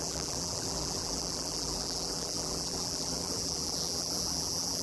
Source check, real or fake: fake